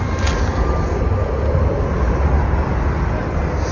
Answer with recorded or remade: recorded